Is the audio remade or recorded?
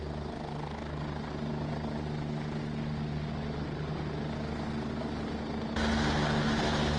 recorded